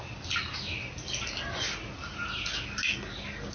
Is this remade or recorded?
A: recorded